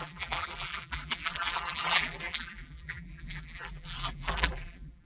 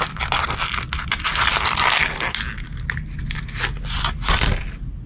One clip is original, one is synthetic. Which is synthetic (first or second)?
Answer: first